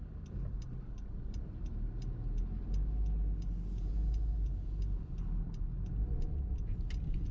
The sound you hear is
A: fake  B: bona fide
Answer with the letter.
B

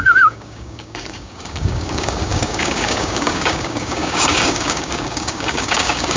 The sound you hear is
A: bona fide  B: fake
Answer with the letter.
B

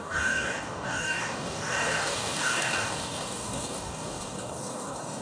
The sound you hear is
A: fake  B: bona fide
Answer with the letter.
A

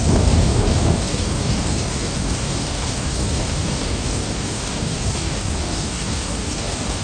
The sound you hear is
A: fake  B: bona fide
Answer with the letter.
A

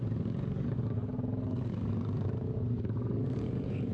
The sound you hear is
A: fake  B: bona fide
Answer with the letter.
A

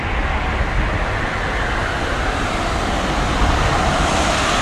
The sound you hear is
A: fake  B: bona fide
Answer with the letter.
B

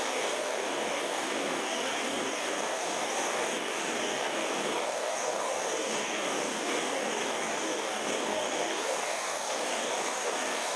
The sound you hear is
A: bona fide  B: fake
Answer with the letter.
B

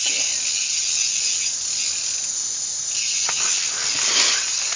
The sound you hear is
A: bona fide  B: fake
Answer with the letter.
A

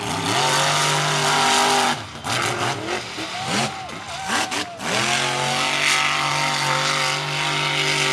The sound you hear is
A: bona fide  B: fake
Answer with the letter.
A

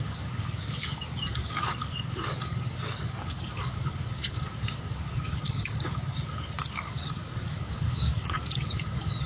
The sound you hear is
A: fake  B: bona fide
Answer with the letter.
A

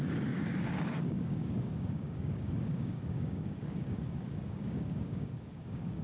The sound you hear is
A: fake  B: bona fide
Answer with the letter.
A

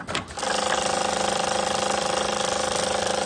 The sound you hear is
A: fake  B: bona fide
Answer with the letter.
B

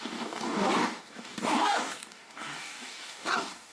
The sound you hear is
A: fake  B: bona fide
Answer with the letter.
A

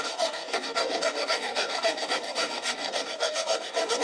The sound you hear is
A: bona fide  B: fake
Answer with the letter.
B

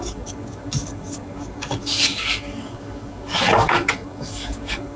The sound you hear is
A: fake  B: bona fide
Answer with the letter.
A